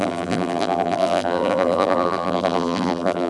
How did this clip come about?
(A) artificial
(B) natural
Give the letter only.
A